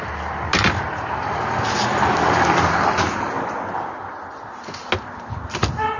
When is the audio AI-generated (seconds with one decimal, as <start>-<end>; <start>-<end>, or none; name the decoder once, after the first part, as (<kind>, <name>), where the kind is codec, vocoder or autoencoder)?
none